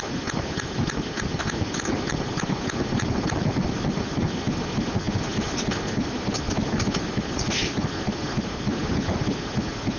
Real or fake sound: real